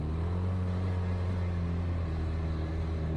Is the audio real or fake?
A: real